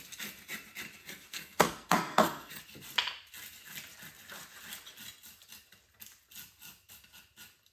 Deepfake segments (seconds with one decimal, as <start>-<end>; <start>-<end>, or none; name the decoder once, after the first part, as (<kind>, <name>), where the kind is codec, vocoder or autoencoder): 1.0-2.6 (codec, SNAC)